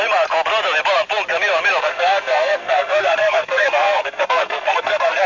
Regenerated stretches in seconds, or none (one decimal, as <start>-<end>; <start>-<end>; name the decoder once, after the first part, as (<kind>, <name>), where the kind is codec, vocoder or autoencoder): 1.8-5.3 (codec, SNAC)